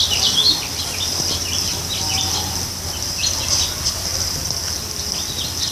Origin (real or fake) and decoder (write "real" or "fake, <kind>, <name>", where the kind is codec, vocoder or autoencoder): real